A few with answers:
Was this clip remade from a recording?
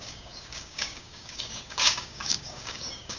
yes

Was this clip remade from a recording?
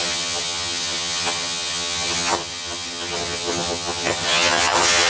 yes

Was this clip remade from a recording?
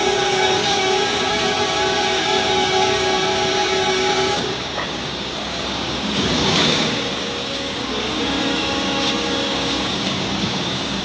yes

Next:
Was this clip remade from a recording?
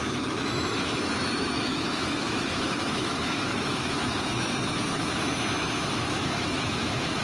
yes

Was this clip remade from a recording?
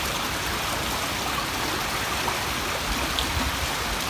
no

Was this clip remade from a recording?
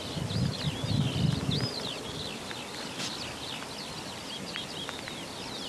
no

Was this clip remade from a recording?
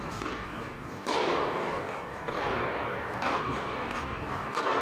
yes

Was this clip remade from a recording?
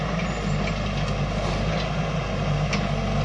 no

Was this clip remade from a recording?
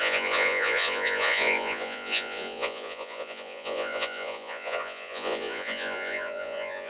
yes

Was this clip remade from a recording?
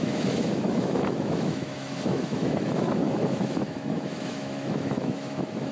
yes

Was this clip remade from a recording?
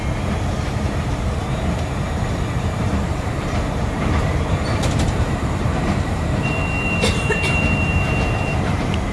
yes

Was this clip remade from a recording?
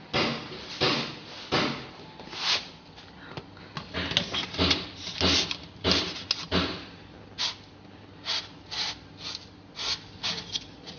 no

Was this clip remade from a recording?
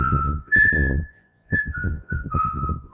yes